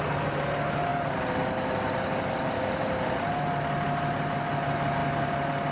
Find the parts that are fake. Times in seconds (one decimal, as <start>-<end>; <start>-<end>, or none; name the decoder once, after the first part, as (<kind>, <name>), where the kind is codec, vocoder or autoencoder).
none